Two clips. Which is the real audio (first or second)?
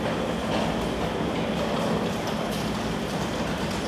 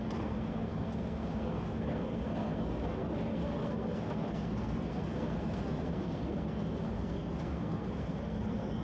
first